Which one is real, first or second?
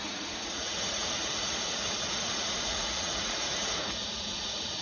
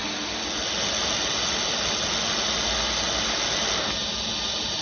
second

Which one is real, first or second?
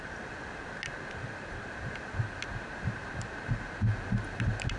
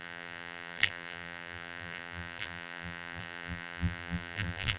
first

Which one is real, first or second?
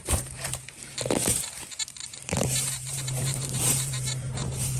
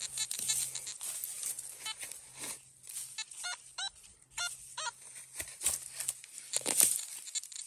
second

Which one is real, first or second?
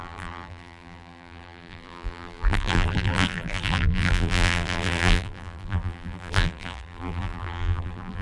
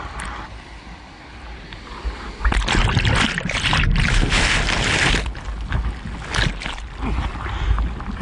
second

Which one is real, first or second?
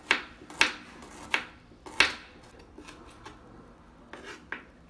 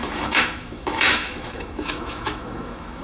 first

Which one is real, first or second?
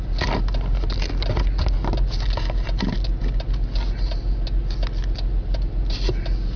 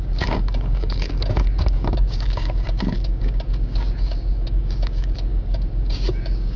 first